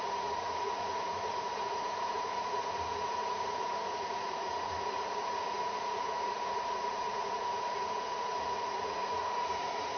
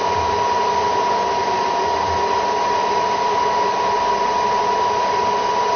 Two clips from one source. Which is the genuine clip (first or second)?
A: second